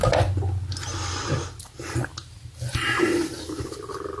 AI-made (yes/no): no